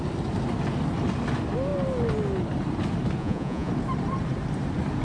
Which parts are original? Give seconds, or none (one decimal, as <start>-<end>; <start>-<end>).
0.0-3.2; 3.7-5.0